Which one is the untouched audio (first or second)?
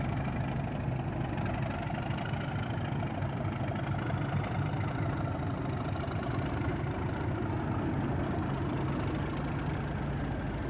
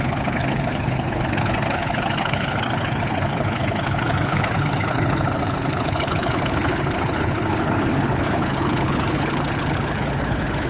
first